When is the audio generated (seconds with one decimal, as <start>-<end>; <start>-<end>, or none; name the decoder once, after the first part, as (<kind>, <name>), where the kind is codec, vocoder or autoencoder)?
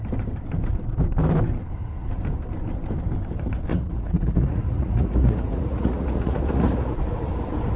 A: 3.7-7.3 (vocoder, Vocos)